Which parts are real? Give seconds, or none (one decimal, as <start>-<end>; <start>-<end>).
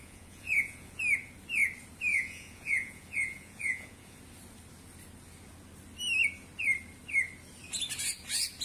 1.0-2.1; 4.2-8.6